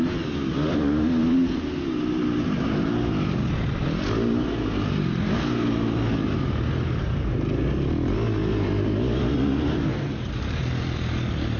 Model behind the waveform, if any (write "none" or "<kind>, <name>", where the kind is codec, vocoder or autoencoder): none